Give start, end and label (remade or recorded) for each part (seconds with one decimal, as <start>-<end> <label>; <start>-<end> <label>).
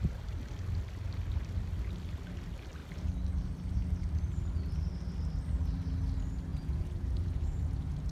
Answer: 0.0-6.5 recorded; 6.5-8.1 remade